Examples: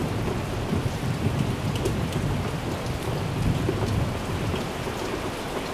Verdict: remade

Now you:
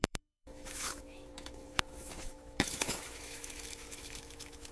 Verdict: remade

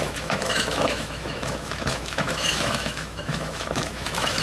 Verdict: remade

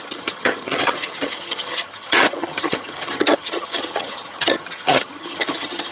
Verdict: remade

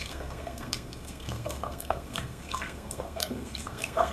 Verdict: remade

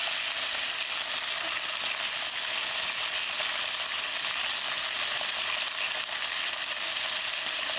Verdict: recorded